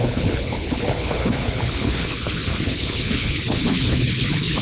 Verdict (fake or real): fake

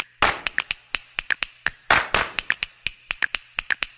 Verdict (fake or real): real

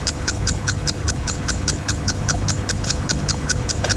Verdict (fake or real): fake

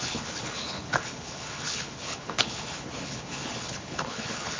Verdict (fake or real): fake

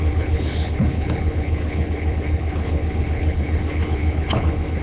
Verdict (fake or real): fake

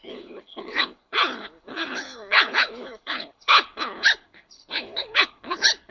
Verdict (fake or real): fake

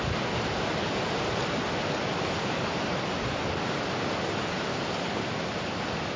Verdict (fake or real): real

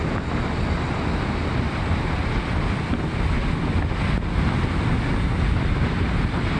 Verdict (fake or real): real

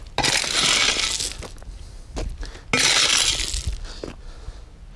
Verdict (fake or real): real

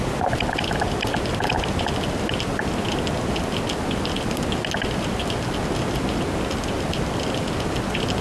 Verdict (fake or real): real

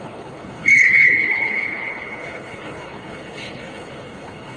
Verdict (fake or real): fake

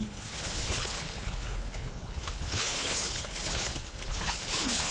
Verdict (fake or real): fake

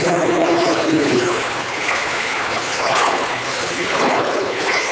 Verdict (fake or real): fake